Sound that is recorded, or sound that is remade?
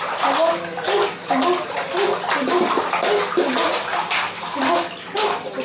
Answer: recorded